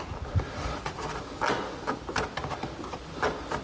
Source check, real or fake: real